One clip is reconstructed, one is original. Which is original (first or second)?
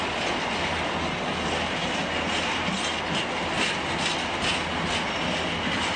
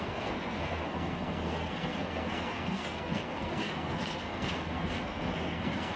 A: first